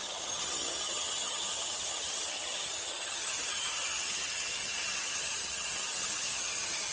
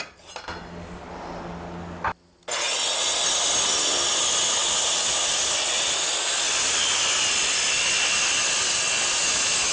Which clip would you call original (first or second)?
second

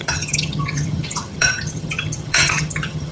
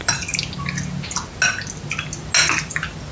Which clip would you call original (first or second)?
second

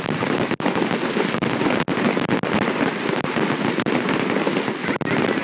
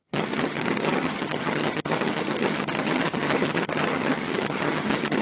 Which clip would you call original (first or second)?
first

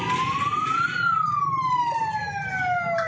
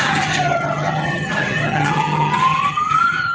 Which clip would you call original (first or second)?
first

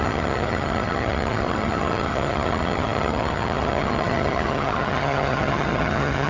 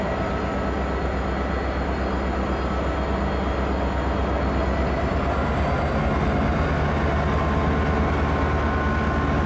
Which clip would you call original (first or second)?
second